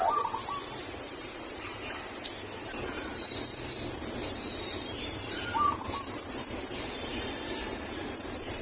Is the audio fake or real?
fake